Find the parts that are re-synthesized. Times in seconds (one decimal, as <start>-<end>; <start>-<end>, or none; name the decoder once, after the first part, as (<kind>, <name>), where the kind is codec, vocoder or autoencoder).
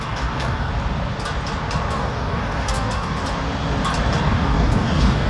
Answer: 0.0-0.7 (codec, DAC); 1.9-3.2; 4.2-5.3